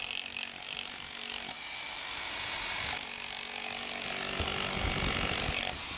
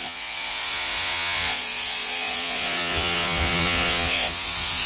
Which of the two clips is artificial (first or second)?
second